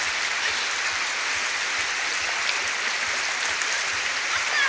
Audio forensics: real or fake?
real